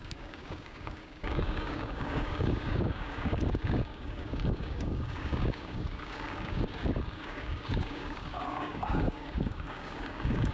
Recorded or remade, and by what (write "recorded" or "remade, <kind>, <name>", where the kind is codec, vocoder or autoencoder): remade, codec, DAC